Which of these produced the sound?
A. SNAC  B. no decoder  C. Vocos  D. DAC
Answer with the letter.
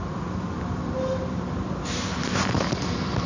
B